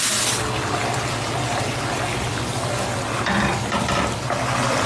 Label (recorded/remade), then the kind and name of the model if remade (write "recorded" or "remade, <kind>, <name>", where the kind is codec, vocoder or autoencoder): recorded